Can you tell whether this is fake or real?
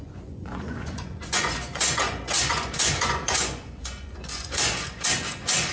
fake